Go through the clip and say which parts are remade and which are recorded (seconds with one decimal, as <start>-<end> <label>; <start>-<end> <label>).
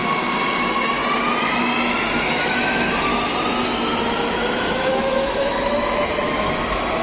0.0-0.6 recorded; 0.6-1.0 remade; 1.0-2.1 recorded; 2.1-3.1 remade; 3.1-4.3 recorded; 4.3-7.0 remade